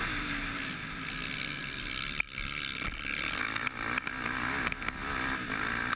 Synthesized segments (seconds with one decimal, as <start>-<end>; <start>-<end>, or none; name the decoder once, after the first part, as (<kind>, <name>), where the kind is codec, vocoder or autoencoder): 1.6-3.4 (vocoder, BigVGAN v2); 5.0-6.0